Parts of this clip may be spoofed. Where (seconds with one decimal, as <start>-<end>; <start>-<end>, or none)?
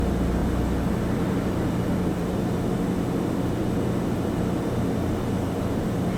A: 0.0-0.4; 0.9-2.4; 5.6-6.2